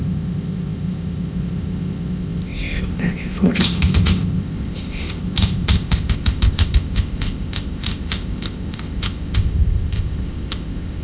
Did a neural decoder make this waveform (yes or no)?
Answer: yes